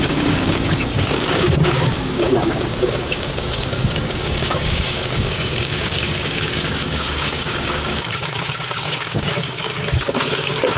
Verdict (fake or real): fake